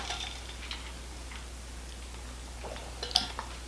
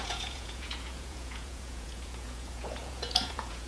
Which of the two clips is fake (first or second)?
second